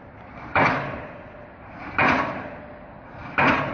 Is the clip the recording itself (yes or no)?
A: yes